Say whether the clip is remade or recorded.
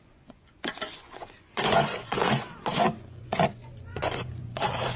remade